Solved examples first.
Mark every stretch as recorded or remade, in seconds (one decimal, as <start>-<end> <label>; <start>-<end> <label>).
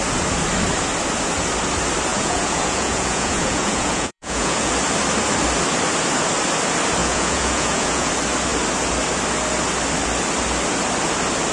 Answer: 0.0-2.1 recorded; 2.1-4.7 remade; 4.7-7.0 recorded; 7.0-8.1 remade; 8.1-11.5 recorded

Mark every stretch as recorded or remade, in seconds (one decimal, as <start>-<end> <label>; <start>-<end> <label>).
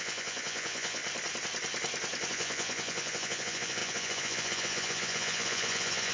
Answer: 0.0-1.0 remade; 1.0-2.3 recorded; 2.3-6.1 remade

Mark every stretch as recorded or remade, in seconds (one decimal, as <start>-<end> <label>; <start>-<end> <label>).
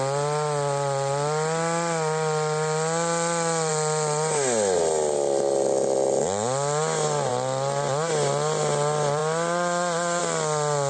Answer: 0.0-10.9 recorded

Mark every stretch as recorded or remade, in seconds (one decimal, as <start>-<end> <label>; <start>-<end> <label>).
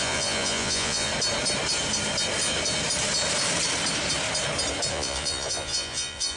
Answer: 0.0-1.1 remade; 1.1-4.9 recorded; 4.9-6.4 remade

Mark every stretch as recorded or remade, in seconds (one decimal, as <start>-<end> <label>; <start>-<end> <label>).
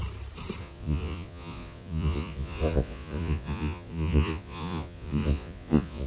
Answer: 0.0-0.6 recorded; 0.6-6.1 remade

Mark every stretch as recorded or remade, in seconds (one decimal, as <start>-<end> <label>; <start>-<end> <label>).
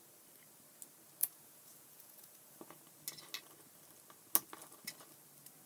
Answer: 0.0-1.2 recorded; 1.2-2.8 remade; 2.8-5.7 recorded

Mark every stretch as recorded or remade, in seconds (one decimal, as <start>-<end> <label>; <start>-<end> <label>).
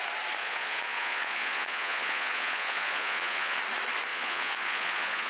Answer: 0.0-0.4 recorded; 0.4-3.6 remade; 3.6-4.1 recorded; 4.1-5.3 remade